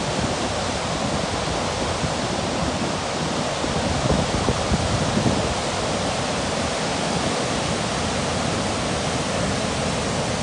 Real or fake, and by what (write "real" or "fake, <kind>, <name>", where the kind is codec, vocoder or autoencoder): real